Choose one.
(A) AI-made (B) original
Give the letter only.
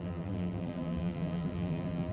A